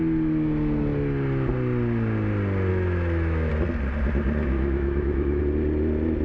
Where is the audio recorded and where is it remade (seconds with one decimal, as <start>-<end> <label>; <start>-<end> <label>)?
0.0-2.7 recorded; 2.7-3.5 remade; 3.5-4.4 recorded; 4.4-5.4 remade; 5.4-6.2 recorded